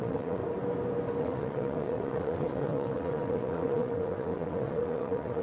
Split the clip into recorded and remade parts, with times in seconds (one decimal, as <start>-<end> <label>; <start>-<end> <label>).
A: 0.0-0.4 remade; 0.4-1.2 recorded; 1.2-5.4 remade